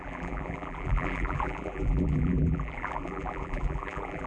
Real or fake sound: fake